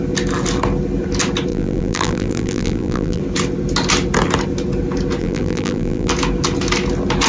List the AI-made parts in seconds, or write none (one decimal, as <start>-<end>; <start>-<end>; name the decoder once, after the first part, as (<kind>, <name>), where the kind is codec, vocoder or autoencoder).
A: 1.5-3.2 (vocoder, BigVGAN v2); 5.2-6.1